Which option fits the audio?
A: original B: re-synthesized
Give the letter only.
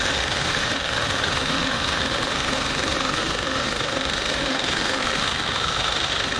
B